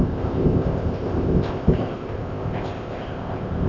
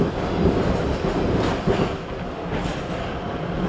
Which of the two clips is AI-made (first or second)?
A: first